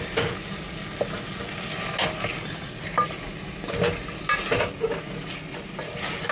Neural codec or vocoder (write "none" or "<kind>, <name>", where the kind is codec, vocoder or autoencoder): none